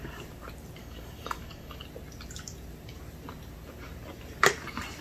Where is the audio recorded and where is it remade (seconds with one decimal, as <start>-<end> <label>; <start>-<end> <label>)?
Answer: 0.0-0.8 recorded; 0.8-1.8 remade; 1.8-5.0 recorded